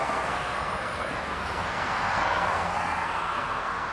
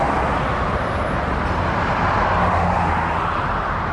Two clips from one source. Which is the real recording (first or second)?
second